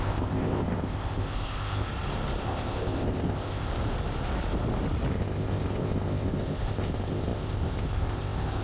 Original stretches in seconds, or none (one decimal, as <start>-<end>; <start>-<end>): 1.9-2.4; 3.7-5.1

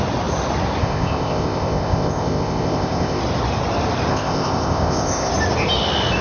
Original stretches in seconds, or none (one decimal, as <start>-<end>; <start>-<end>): 0.0-0.8; 3.2-4.1; 5.3-6.2

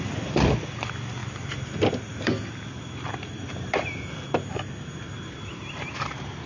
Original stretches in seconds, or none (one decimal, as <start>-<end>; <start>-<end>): 0.0-6.5

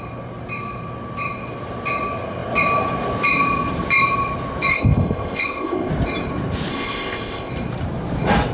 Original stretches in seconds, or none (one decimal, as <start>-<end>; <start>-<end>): 0.0-4.7; 5.9-6.7; 7.5-8.5

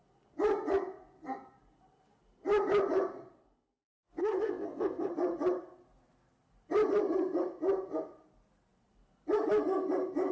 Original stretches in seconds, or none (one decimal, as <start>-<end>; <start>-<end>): 0.0-4.2; 5.1-10.3

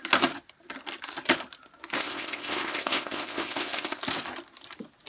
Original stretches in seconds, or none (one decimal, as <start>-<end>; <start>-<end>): 0.0-2.0; 4.0-5.1